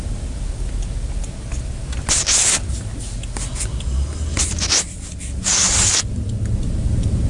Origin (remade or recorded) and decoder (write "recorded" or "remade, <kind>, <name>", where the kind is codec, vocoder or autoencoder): recorded